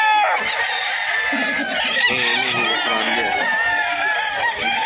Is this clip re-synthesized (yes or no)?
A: no